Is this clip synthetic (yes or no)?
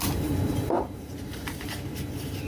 yes